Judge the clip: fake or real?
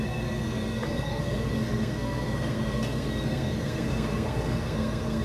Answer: fake